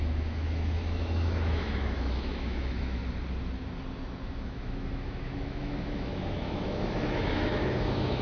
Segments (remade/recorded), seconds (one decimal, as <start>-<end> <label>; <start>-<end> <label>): 0.0-3.0 remade; 3.0-4.2 recorded; 4.2-8.2 remade